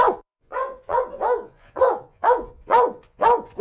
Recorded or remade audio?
remade